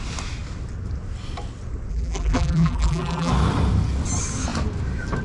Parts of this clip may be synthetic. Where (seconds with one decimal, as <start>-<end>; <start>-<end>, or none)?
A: 1.9-3.3